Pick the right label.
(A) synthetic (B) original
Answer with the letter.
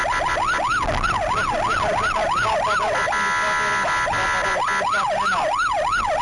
B